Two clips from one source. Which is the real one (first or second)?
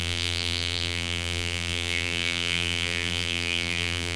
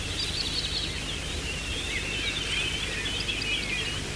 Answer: second